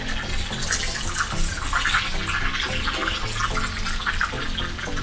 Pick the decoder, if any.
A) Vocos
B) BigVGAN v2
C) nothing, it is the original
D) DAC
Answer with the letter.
C